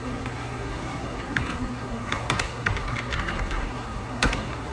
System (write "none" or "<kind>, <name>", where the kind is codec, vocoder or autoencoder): codec, SNAC